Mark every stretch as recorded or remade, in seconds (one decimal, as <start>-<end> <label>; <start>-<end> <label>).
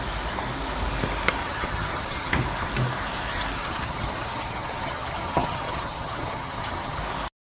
0.0-1.4 recorded; 1.4-2.3 remade; 2.3-3.6 recorded; 3.6-7.0 remade; 7.0-7.4 recorded